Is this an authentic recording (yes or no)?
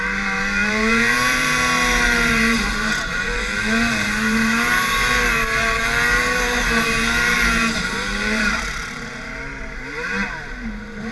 no